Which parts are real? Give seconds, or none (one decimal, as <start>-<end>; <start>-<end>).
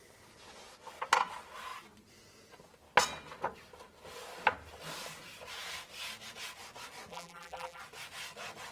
0.0-7.1; 7.8-8.7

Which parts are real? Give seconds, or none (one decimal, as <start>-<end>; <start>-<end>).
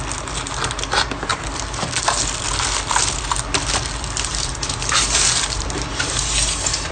0.0-4.3; 6.2-6.9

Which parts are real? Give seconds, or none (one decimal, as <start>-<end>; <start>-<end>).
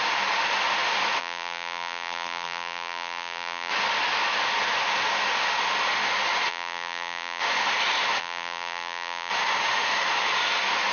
0.0-1.2; 3.7-6.5; 7.4-8.2; 9.3-10.9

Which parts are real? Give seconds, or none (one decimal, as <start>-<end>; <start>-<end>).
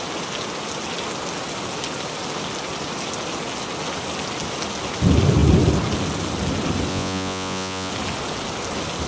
0.0-6.9; 7.9-9.1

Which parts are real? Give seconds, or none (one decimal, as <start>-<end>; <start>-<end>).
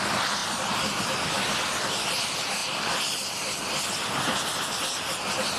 0.0-5.6